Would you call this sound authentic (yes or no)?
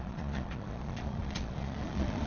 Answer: no